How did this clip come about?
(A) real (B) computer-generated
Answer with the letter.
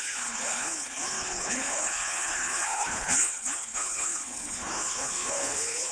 B